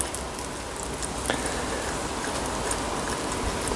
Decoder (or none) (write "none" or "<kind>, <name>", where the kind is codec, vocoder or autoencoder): none